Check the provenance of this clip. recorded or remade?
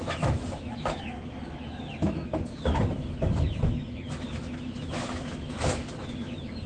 remade